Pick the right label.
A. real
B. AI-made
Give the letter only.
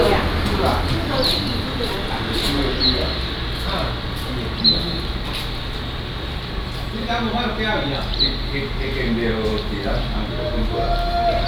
A